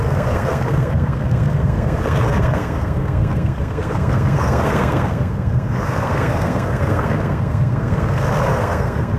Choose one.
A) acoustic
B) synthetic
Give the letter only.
B